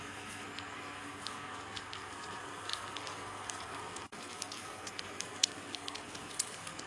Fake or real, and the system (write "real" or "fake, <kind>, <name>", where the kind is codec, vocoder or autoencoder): fake, codec, SNAC